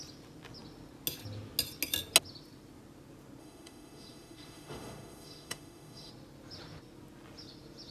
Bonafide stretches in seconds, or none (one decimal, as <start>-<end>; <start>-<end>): 0.0-3.4; 6.1-7.9